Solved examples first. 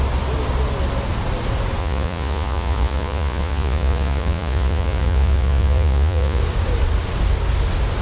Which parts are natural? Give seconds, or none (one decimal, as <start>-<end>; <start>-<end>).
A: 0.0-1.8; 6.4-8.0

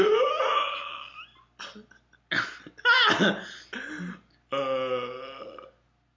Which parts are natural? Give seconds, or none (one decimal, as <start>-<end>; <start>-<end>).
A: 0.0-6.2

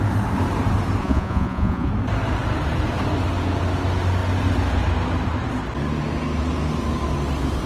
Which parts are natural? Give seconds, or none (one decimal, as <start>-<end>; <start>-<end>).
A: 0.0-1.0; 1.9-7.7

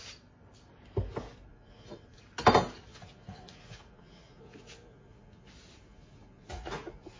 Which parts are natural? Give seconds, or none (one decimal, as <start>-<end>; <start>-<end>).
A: 0.0-1.5; 2.2-2.9; 5.5-5.9

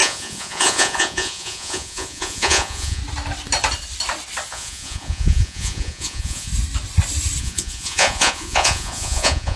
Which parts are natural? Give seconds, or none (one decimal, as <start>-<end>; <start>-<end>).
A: 3.0-4.5; 6.5-7.4

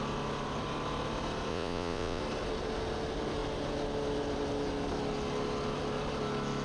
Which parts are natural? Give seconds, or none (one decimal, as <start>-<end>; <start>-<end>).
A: 0.0-1.5; 2.2-6.6

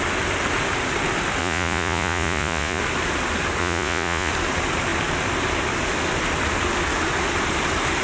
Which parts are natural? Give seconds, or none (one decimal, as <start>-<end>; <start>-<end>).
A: 0.0-1.4; 2.8-3.6; 4.3-8.0

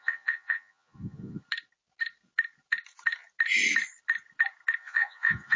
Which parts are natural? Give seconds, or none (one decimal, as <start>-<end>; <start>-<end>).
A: 1.4-4.8